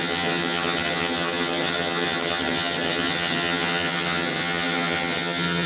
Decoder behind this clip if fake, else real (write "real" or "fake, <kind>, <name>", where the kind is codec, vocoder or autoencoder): fake, vocoder, HiFi-GAN